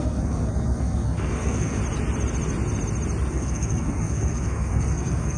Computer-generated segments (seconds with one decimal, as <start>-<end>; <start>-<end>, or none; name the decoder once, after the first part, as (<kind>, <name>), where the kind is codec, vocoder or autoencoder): 0.0-1.8 (codec, SNAC); 3.3-5.4